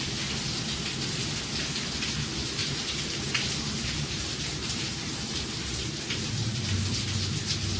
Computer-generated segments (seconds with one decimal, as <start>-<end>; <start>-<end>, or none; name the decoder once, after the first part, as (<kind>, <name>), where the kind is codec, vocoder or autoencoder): 2.6-5.2 (vocoder, BigVGAN v2)